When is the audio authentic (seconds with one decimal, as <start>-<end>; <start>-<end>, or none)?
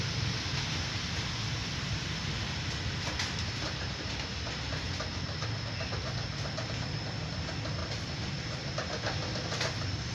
0.0-1.6; 2.3-7.8; 8.7-10.1